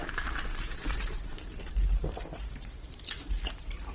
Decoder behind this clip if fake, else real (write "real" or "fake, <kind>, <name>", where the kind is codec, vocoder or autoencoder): fake, vocoder, BigVGAN v2